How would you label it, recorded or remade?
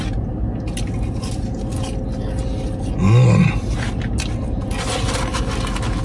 recorded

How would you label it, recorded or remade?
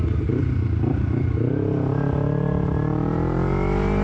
recorded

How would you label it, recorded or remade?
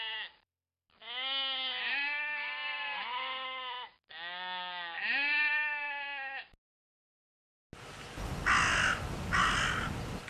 recorded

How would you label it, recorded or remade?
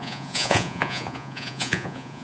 remade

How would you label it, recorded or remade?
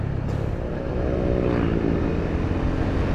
recorded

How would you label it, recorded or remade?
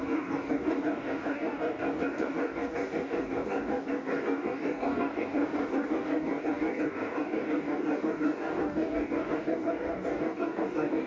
remade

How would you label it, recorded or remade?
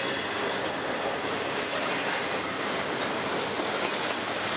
recorded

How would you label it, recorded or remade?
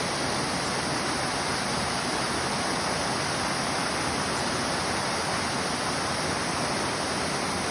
recorded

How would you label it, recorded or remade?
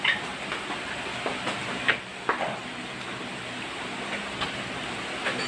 recorded